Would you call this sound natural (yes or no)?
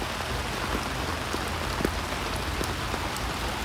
yes